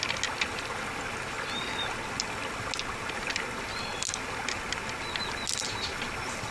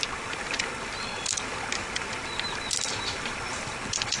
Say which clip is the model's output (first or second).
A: second